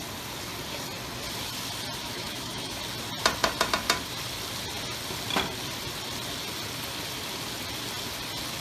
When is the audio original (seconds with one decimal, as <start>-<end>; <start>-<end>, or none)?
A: 0.0-2.0; 2.8-8.6